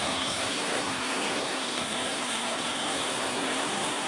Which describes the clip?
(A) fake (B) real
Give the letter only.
A